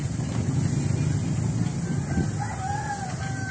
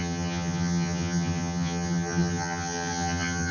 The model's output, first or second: second